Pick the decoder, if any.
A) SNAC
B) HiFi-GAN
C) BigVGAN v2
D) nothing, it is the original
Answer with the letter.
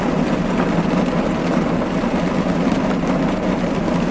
D